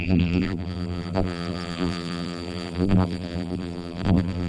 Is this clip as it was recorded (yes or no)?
no